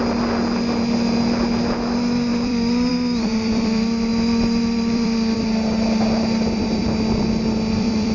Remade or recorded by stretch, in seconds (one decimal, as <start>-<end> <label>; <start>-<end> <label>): 0.0-4.1 remade; 4.1-4.6 recorded; 4.6-8.1 remade